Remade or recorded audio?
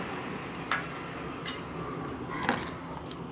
recorded